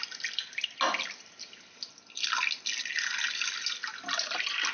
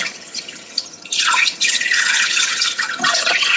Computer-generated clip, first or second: second